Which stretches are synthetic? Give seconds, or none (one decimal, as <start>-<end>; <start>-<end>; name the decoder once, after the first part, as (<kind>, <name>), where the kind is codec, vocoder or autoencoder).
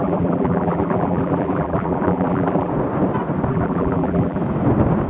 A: 0.0-2.7 (vocoder, BigVGAN v2); 3.5-4.4